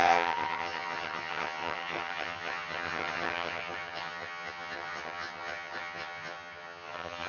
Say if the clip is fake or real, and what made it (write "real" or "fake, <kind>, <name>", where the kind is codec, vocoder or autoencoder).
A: fake, vocoder, HiFi-GAN